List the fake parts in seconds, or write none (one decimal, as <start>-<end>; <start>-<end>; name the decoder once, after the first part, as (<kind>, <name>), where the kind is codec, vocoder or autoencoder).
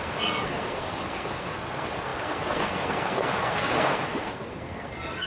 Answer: 0.0-5.3 (codec, SNAC)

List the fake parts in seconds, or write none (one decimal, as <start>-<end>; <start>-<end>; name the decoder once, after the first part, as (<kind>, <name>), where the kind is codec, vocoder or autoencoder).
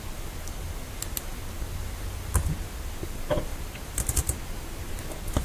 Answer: none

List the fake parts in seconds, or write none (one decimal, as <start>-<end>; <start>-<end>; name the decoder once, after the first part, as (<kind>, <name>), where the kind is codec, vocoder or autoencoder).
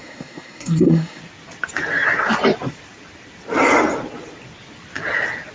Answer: 0.0-1.2 (codec, SNAC)